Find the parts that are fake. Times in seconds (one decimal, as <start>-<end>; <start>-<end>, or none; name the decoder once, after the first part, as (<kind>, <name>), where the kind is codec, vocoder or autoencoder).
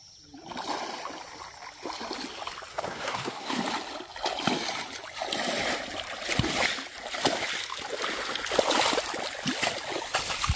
2.7-3.6 (codec, SNAC)